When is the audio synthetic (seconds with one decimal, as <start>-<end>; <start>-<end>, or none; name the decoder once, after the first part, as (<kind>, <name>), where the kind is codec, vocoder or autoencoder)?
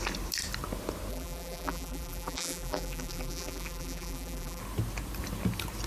1.1-4.6 (vocoder, BigVGAN v2)